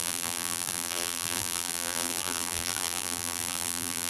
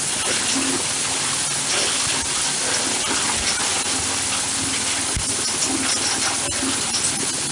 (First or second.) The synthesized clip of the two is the first